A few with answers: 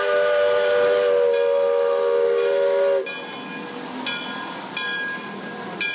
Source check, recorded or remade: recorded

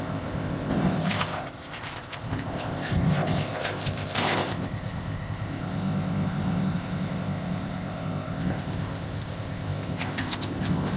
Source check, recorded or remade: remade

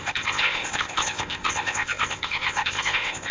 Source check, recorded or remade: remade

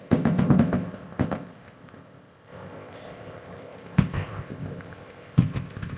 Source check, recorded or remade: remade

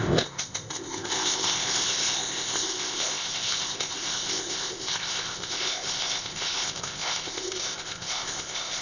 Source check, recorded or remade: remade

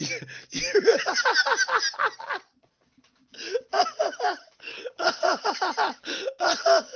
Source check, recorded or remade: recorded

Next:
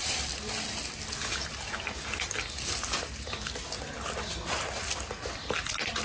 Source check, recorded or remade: recorded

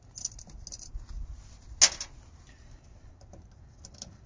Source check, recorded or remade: recorded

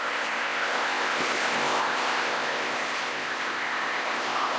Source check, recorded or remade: remade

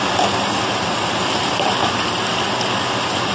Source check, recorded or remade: recorded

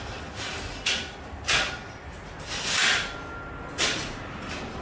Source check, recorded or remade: recorded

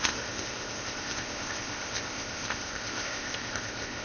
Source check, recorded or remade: remade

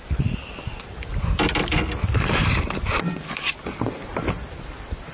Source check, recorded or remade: recorded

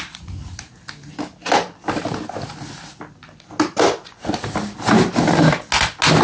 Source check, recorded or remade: recorded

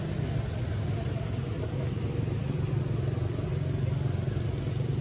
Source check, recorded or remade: recorded